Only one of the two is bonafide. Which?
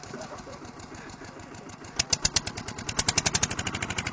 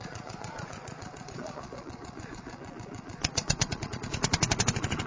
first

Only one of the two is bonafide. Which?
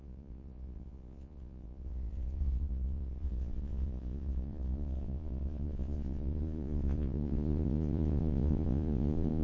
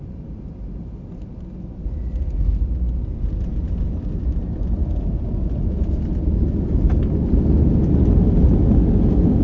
second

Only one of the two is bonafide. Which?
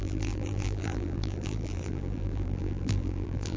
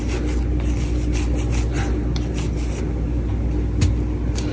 second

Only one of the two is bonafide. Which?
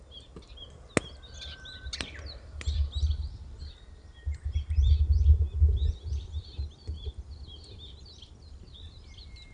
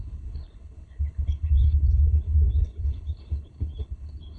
first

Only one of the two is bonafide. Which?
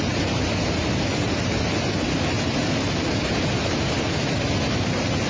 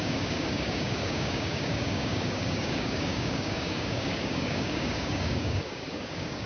first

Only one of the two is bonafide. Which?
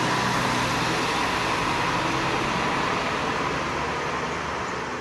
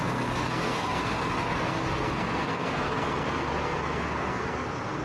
first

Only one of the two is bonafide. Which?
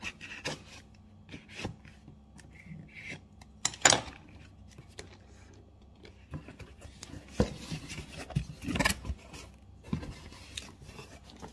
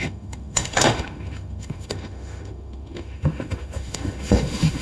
first